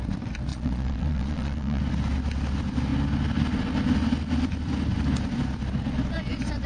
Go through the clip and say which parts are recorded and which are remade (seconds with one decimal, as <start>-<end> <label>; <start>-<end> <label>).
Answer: 0.0-0.5 recorded; 0.5-1.8 remade; 1.8-6.7 recorded